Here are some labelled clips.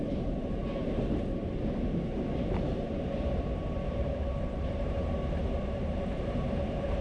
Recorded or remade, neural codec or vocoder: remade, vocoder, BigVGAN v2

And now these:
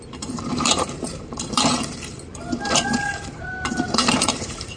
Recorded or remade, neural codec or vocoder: remade, vocoder, BigVGAN v2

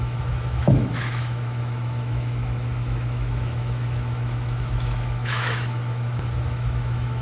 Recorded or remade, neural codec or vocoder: remade, autoencoder, DAC-VAE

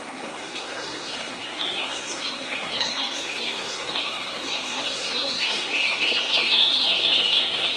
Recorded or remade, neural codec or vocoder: remade, codec, SNAC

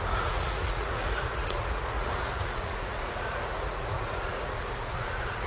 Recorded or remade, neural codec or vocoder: remade, vocoder, Vocos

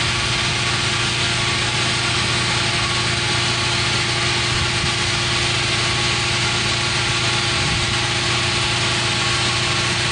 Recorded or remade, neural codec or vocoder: recorded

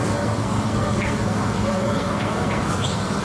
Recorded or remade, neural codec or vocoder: remade, codec, SNAC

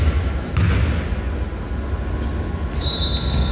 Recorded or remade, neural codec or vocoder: recorded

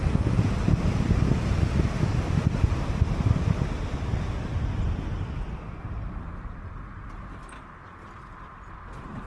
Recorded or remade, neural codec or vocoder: remade, vocoder, BigVGAN v2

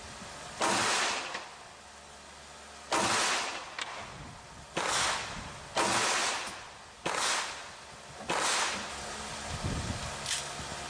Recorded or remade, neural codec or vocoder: recorded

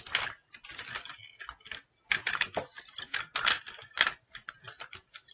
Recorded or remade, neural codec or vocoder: recorded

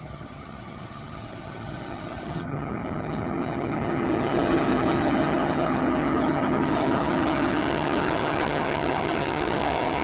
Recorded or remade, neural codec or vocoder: remade, vocoder, HiFi-GAN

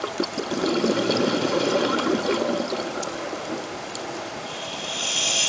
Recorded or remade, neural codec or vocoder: remade, vocoder, BigVGAN v2